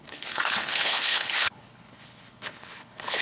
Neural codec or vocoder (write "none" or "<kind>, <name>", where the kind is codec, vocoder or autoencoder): codec, HILCodec